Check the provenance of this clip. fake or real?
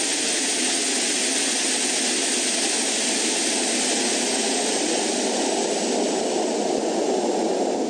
real